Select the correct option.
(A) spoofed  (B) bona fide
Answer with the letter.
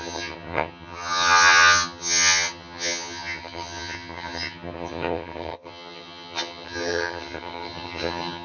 A